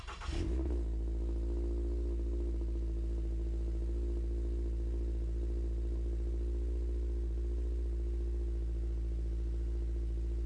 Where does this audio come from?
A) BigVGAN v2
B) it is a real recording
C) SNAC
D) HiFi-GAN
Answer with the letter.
B